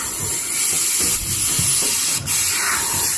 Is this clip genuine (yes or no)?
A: no